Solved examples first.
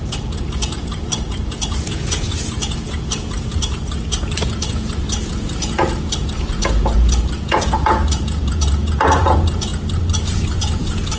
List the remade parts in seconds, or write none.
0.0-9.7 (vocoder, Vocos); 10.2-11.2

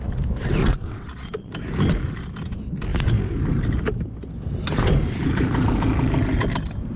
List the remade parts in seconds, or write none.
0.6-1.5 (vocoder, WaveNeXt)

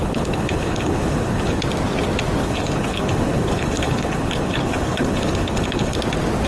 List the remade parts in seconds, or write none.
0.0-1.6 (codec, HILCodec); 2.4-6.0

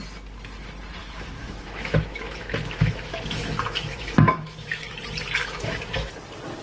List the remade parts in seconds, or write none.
1.0-5.0 (autoencoder, DAC-VAE); 5.4-6.1

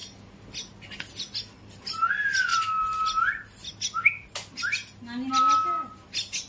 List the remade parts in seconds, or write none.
none